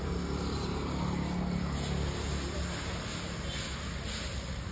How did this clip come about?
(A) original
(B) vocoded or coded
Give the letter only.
A